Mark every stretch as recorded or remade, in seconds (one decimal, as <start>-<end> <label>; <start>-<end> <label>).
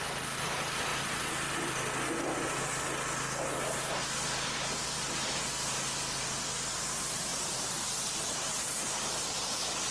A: 0.0-7.3 recorded; 7.3-8.5 remade; 8.5-9.9 recorded